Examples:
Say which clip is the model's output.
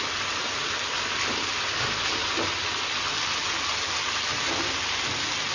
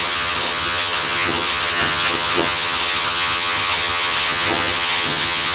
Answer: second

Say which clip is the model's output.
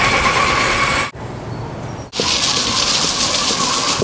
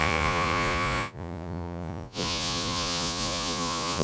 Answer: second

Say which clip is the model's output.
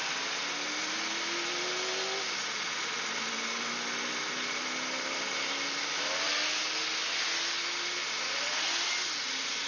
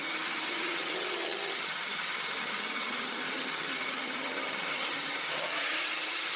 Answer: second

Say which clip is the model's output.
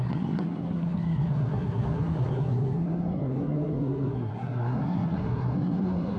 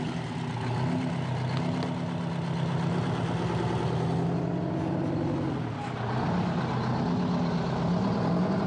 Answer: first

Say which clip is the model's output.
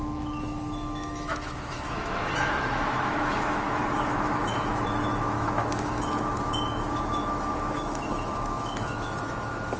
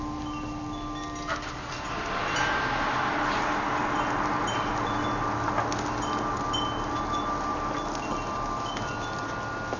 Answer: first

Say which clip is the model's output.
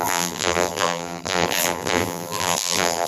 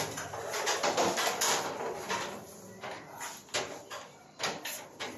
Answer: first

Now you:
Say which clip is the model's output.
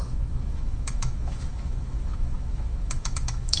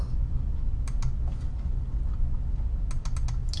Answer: first